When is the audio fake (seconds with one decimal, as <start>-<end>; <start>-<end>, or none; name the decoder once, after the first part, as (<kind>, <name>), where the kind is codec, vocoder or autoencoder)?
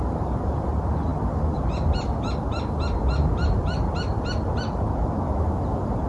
none